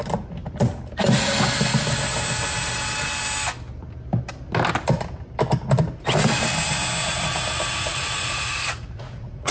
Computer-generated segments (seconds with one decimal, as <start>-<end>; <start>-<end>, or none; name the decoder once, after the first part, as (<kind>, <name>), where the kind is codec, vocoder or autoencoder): 7.9-9.5 (vocoder, Vocos)